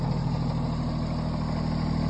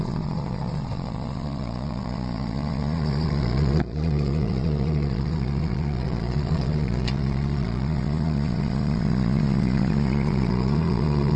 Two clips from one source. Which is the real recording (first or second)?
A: first